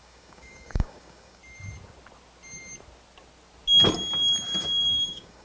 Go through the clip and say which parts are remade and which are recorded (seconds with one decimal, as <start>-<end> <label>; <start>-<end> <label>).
0.0-1.4 remade; 1.4-4.6 recorded; 4.6-5.4 remade